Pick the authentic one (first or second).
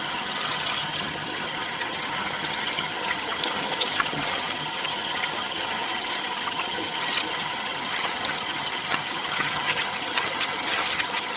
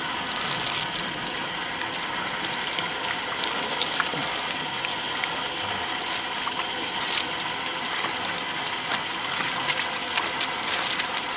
second